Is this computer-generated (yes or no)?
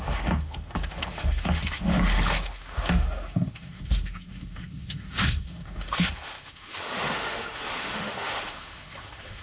yes